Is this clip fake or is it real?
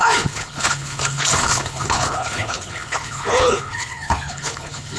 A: fake